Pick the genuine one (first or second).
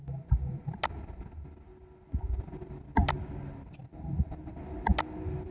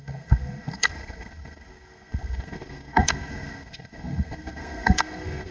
first